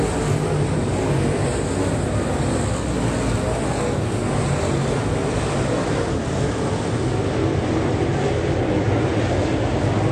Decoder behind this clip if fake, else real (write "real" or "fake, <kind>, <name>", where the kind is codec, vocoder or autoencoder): real